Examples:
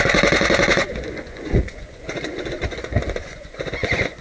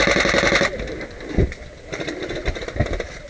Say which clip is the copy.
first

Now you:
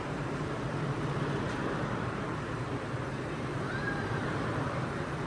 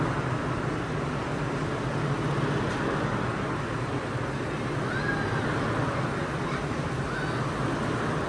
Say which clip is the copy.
first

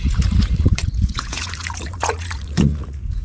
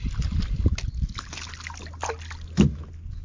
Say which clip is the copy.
first